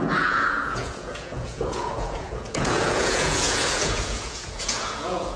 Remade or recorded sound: remade